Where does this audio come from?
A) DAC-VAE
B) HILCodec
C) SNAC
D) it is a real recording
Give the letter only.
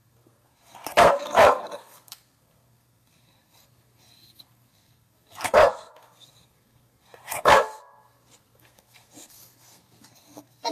C